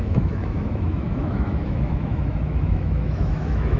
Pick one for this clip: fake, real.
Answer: fake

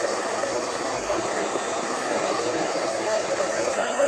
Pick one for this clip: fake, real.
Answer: fake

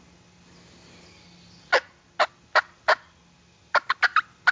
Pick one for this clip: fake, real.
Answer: real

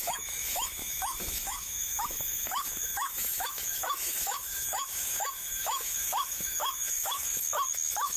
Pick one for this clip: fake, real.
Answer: fake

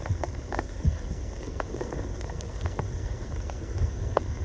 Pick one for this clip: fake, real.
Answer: fake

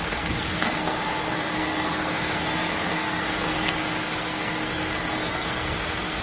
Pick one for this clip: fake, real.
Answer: fake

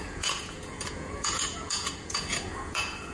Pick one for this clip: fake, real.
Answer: fake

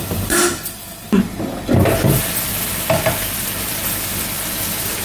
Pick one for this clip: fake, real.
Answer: fake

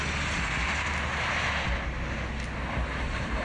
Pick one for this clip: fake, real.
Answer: real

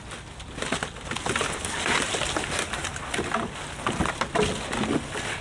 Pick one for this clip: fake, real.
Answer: real